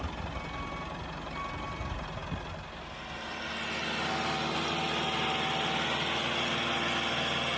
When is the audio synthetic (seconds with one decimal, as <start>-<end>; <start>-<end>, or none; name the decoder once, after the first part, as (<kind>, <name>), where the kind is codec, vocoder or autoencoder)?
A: none